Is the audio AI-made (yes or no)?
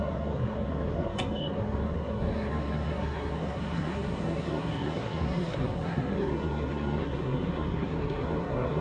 yes